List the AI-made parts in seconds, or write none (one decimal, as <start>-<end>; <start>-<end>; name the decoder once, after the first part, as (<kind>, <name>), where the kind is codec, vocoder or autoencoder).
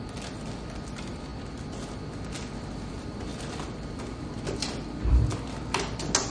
none